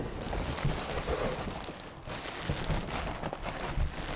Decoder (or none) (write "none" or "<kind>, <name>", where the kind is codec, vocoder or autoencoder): none